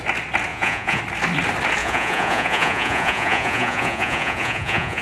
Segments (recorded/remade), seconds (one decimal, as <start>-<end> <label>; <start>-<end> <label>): 0.0-0.5 recorded; 0.5-1.0 remade; 1.0-1.8 recorded; 1.8-5.0 remade